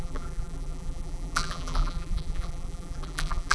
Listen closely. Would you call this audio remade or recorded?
remade